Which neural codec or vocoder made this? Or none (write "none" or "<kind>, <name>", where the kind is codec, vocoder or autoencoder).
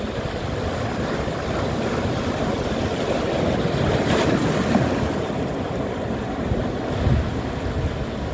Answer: none